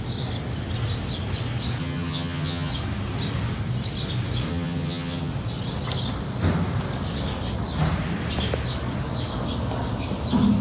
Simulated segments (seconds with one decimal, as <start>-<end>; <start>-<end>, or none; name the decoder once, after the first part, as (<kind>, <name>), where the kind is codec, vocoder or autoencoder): 1.8-2.7 (vocoder, HiFi-GAN); 4.5-5.3